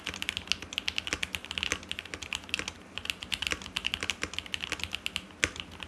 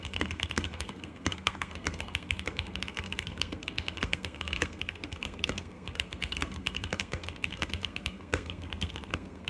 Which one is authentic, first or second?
first